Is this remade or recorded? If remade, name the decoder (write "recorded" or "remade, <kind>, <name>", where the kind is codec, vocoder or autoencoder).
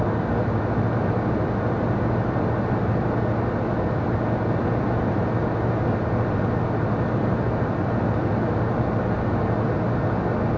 recorded